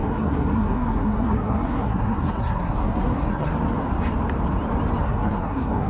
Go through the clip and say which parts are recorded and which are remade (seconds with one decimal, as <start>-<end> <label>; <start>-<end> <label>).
0.0-3.5 remade; 3.5-5.0 recorded; 5.0-5.9 remade